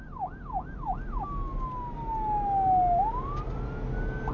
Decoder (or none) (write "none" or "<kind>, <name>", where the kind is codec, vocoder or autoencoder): none